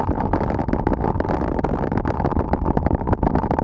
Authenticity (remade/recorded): recorded